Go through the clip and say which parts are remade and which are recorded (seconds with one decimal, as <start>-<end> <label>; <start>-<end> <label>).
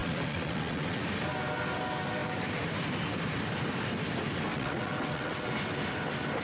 0.0-1.0 remade; 1.0-4.5 recorded; 4.5-5.5 remade; 5.5-6.4 recorded